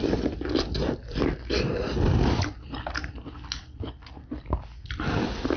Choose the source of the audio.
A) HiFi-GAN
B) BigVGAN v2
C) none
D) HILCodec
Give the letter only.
C